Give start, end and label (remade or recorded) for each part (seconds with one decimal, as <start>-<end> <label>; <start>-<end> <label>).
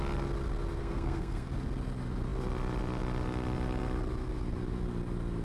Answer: 0.0-0.8 recorded; 0.8-1.5 remade; 1.5-5.4 recorded